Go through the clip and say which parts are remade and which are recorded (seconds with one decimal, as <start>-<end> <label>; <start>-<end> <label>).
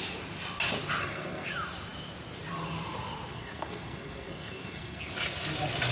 0.0-1.0 recorded; 1.0-1.5 remade; 1.5-3.3 recorded; 3.3-5.1 remade; 5.1-5.9 recorded